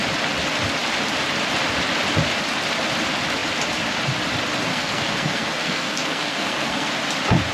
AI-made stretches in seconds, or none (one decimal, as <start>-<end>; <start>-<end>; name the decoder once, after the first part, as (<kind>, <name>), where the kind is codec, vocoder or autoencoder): 4.7-6.9 (codec, SNAC)